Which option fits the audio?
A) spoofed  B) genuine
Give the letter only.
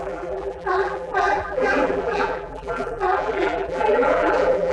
A